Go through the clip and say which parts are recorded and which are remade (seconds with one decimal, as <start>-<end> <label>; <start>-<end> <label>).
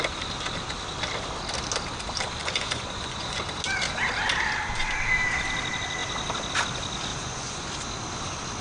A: 0.0-2.4 recorded; 2.4-3.4 remade; 3.4-7.1 recorded; 7.1-7.7 remade; 7.7-8.6 recorded